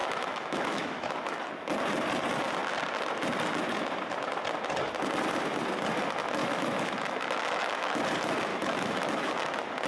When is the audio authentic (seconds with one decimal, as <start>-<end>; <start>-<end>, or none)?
1.4-6.4; 8.0-8.5; 9.3-9.9